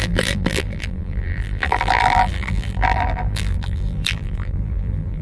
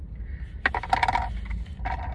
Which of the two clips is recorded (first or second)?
second